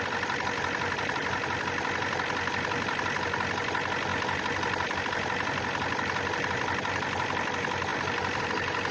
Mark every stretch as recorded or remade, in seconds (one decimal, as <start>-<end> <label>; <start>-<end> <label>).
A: 0.0-8.9 recorded